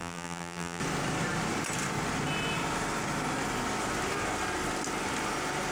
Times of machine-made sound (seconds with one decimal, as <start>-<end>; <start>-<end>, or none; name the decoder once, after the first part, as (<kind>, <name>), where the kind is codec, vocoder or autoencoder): 0.0-0.8 (vocoder, BigVGAN v2)